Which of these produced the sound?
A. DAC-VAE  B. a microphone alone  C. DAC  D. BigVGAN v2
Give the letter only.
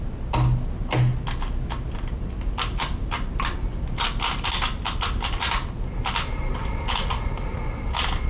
B